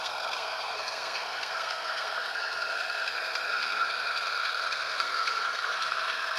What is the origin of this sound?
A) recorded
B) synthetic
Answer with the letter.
B